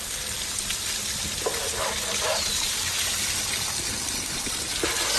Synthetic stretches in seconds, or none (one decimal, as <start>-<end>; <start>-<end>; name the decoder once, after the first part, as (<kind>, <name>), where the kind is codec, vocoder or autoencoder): none